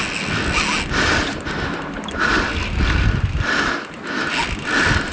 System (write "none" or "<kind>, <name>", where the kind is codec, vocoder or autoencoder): none